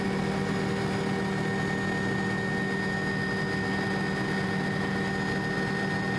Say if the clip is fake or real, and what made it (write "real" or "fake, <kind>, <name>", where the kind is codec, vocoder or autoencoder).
real